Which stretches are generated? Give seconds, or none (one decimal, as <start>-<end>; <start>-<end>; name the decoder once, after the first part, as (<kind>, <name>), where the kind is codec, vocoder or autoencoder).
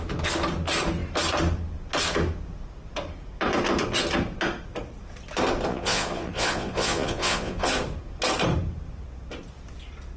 5.7-7.7 (vocoder, Vocos)